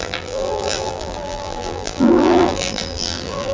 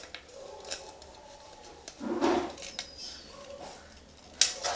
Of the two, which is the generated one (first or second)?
first